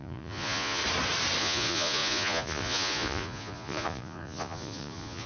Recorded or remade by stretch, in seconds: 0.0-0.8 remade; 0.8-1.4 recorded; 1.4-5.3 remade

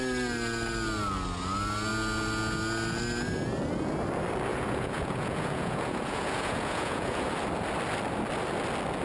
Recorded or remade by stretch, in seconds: 0.0-4.5 recorded; 4.5-7.3 remade; 7.3-9.0 recorded

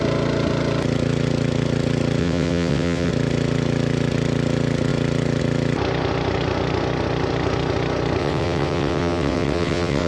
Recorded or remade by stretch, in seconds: 0.0-2.2 recorded; 2.2-3.1 remade; 3.1-8.2 recorded; 8.2-10.1 remade